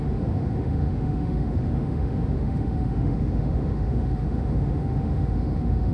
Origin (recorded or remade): remade